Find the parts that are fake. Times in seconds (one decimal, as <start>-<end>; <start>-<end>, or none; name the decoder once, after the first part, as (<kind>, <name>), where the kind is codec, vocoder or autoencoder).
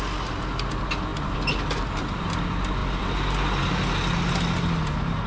none